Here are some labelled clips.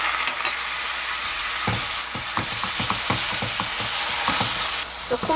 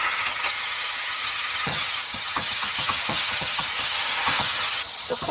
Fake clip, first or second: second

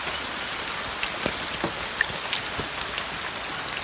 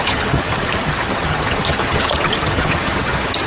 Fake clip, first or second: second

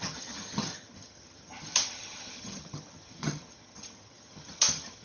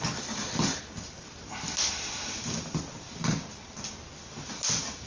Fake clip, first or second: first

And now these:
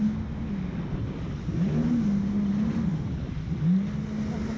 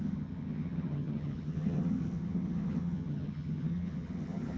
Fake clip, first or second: second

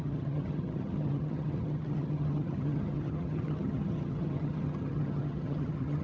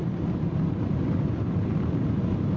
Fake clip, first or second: first